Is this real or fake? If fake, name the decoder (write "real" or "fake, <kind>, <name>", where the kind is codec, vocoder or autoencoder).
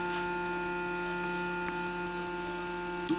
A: real